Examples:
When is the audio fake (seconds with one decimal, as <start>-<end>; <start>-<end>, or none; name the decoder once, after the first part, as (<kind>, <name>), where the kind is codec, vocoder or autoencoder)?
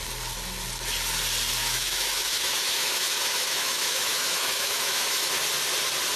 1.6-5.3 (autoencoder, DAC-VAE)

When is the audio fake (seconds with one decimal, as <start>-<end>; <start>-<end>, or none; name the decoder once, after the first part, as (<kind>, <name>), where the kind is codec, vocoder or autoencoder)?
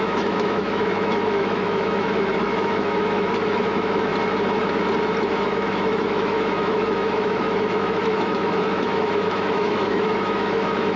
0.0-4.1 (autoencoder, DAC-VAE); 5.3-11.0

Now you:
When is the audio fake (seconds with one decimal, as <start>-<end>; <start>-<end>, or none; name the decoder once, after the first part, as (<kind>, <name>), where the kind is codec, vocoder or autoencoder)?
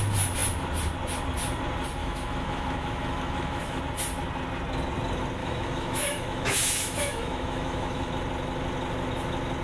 2.0-3.8 (autoencoder, DAC-VAE); 5.4-8.1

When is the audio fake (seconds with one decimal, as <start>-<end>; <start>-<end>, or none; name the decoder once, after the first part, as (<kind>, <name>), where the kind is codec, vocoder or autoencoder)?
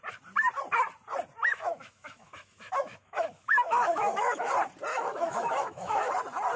1.4-4.5 (autoencoder, DAC-VAE); 4.9-6.1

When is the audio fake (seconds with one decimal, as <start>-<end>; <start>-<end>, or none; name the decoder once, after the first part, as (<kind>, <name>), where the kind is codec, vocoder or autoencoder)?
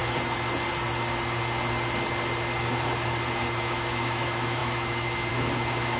3.6-6.0 (autoencoder, DAC-VAE)